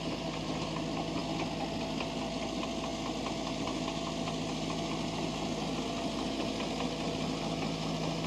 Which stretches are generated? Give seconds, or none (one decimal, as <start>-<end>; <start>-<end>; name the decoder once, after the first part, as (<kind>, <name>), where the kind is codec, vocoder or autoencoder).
none